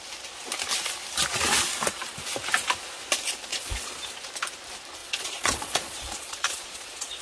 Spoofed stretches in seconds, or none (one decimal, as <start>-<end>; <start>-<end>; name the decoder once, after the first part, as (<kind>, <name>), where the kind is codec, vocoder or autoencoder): 3.5-4.0 (vocoder, Vocos); 5.0-7.2